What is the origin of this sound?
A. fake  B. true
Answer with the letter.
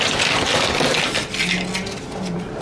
B